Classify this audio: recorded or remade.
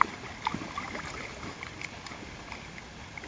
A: recorded